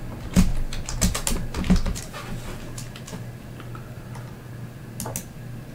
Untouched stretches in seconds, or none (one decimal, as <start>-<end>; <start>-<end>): 0.0-5.7